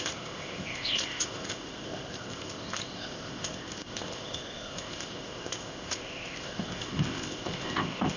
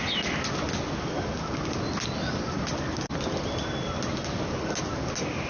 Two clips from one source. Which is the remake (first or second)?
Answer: first